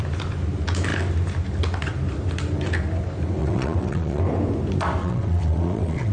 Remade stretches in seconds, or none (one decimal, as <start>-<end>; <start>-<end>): 3.4-4.2; 5.0-6.1